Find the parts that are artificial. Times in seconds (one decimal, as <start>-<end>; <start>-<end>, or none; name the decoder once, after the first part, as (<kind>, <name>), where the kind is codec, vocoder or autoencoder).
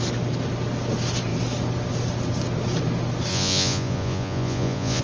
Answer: 3.3-5.0 (vocoder, Vocos)